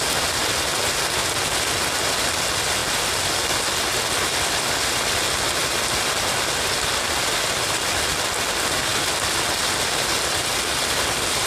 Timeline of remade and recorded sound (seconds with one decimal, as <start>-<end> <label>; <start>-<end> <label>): 0.0-11.5 recorded